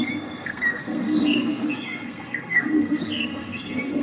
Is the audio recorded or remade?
remade